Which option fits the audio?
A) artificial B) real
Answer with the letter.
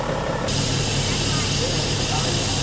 A